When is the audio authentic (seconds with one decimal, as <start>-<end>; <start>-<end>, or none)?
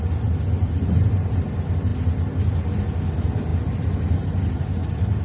0.0-5.2